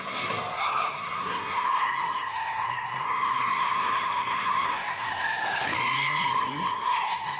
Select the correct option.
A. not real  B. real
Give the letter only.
A